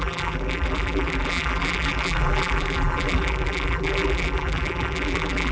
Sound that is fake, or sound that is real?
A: fake